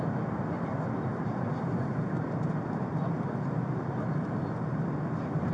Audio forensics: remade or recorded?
recorded